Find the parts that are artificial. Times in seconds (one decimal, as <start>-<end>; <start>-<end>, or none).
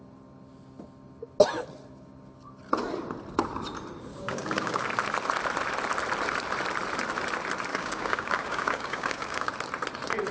4.1-4.8; 7.7-9.5